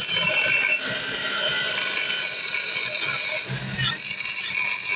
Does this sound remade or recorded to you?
recorded